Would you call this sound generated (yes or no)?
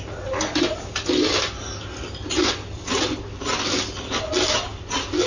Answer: no